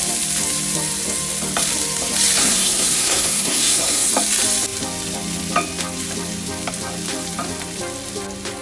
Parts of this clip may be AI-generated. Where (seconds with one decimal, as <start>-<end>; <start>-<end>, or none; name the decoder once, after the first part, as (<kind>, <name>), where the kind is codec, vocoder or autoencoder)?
2.4-4.1 (codec, SNAC)